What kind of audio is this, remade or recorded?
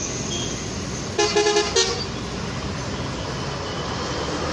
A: recorded